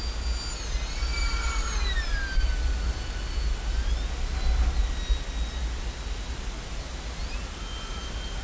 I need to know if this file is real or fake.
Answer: real